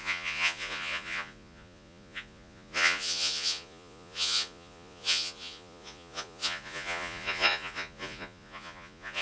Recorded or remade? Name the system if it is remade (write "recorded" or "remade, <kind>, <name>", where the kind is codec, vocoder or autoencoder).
remade, vocoder, Vocos